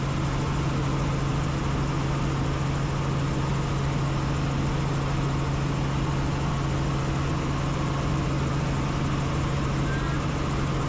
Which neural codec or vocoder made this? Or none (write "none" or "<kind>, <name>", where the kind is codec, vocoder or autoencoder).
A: none